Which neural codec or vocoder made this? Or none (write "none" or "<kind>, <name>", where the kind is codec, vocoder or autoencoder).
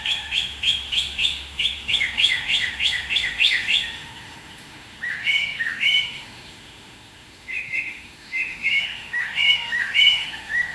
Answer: autoencoder, DAC-VAE